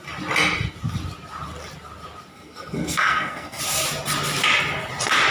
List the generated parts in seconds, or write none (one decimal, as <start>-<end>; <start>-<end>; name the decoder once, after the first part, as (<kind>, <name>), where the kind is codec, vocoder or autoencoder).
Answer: 2.3-3.6 (codec, SNAC)